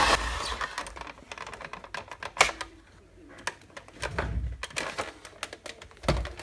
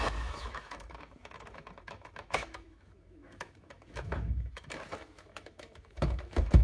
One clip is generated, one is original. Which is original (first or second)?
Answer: first